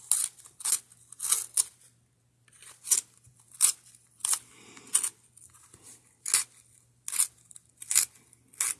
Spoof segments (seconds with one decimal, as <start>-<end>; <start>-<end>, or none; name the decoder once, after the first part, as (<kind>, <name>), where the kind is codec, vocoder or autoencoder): none